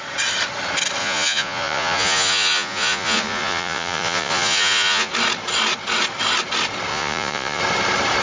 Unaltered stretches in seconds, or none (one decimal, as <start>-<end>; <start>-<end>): 0.0-1.0; 5.1-6.9; 7.6-8.2